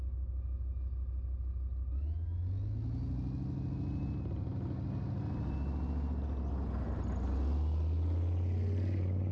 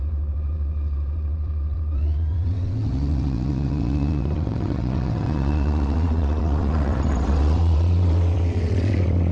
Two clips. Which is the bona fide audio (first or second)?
first